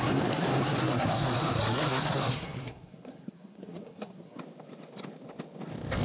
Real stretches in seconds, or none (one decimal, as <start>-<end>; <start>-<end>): 0.0-0.8; 4.4-6.0